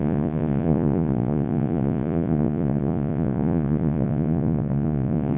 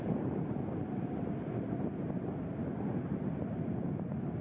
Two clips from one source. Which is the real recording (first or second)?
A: second